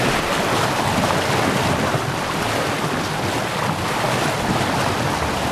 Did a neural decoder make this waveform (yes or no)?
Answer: no